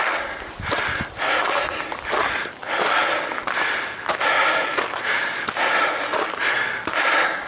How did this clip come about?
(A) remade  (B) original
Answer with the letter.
B